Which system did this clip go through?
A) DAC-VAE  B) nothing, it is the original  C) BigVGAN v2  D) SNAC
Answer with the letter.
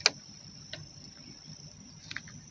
B